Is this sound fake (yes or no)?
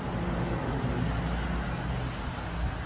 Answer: no